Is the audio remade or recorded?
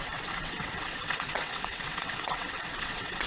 remade